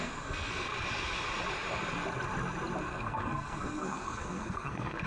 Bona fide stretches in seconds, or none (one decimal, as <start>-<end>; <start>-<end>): 0.7-2.8